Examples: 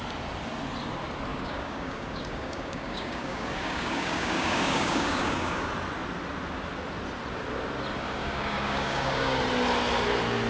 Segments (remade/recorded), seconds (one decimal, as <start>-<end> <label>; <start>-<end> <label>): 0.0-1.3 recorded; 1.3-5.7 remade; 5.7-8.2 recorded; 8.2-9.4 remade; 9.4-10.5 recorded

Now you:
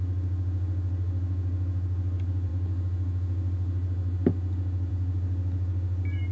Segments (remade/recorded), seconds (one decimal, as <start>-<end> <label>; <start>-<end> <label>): 0.0-6.3 recorded

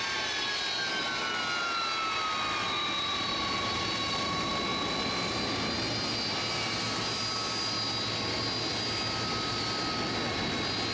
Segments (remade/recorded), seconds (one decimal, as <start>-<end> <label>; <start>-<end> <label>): 0.0-10.9 recorded

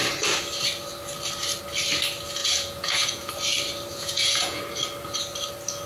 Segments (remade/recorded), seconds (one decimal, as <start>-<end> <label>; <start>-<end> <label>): 0.0-2.4 recorded; 2.4-3.3 remade; 3.3-3.9 recorded; 3.9-4.6 remade; 4.6-5.9 recorded

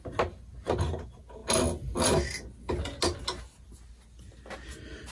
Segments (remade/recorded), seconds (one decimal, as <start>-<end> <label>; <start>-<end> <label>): 0.0-5.1 recorded

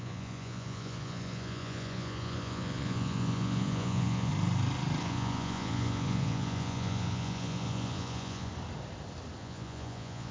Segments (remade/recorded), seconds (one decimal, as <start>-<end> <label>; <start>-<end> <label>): 0.0-4.3 remade; 4.3-5.0 recorded; 5.0-8.5 remade; 8.5-9.4 recorded; 9.4-10.3 remade

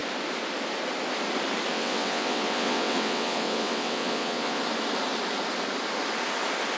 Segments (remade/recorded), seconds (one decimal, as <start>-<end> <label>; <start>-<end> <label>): 0.0-1.7 recorded; 1.7-4.6 remade; 4.6-6.8 recorded

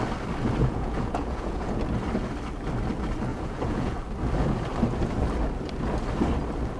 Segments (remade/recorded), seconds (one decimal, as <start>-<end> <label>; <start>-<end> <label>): 0.0-0.6 recorded; 0.6-1.8 remade; 1.8-3.3 recorded; 3.3-3.9 remade; 3.9-6.8 recorded